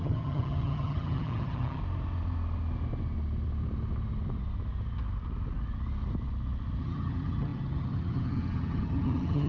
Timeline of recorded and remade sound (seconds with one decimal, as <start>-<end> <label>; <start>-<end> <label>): 0.0-1.8 remade; 1.8-6.8 recorded; 6.8-9.5 remade